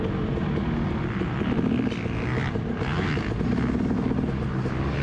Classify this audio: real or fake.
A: real